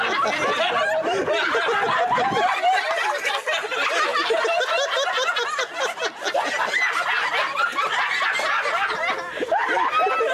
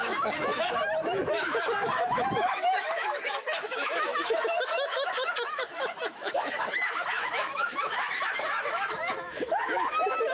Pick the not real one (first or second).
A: second